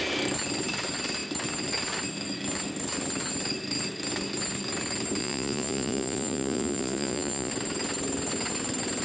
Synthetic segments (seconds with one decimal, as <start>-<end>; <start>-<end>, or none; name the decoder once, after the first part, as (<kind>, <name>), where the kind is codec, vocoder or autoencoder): 5.2-7.5 (vocoder, Vocos)